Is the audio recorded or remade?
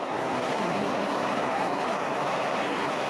remade